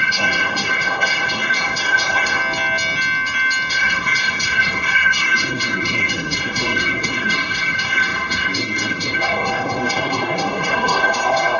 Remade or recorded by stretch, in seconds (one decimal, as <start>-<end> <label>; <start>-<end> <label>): 0.0-2.4 remade; 2.4-3.7 recorded; 3.7-11.6 remade

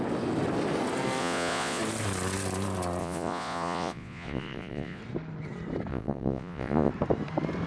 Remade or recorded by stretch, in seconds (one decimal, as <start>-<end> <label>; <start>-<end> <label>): 0.0-1.2 recorded; 1.2-1.8 remade; 1.8-3.0 recorded; 3.0-5.0 remade; 5.0-5.9 recorded; 5.9-6.9 remade; 6.9-7.7 recorded

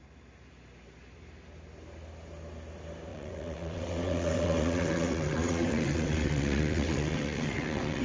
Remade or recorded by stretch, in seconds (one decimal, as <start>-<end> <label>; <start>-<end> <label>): 0.0-3.1 recorded; 3.1-8.0 remade